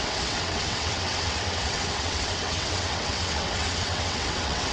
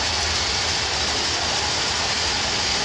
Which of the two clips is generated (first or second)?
first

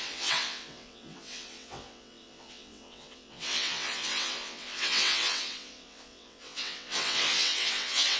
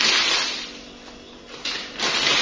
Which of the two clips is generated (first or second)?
first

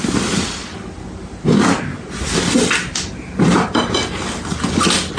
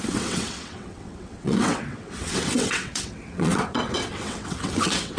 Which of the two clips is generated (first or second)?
second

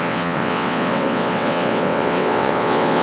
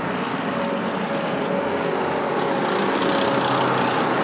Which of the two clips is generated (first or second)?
first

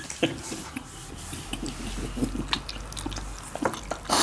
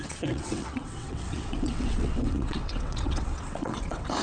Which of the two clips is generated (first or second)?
second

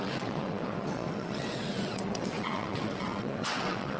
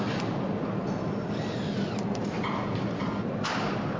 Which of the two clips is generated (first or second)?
first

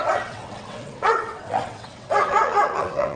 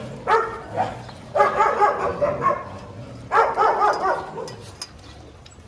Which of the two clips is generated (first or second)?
first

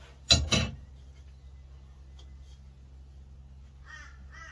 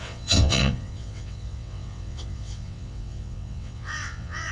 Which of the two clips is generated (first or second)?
second